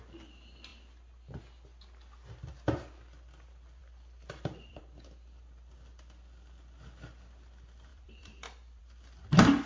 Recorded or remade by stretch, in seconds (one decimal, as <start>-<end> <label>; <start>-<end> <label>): 0.0-3.8 recorded; 3.8-4.8 remade; 4.8-7.9 recorded; 7.9-8.8 remade; 8.8-9.7 recorded